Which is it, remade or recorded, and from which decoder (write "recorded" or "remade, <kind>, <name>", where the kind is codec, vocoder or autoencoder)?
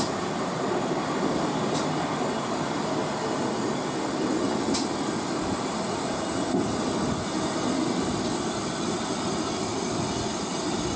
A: recorded